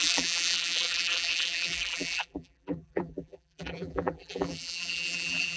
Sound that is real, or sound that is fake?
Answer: fake